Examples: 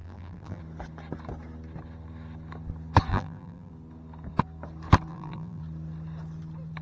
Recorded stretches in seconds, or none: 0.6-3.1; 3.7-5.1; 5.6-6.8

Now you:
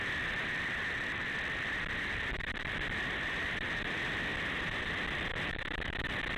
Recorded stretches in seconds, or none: 5.3-6.4

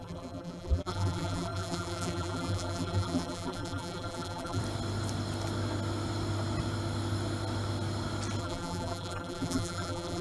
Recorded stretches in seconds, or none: 4.6-8.4

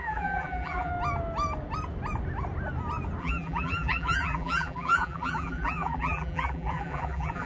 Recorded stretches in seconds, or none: 0.9-3.2

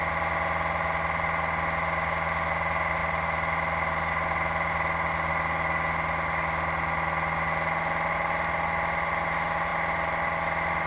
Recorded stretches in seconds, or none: 0.0-10.9

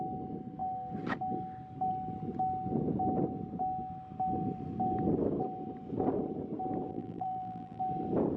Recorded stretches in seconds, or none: 0.0-6.9; 7.8-8.4

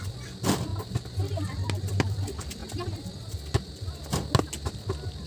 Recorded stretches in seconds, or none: 0.7-1.8; 2.6-4.7

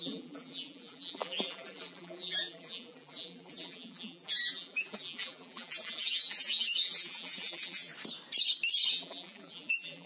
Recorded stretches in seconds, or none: 7.9-8.9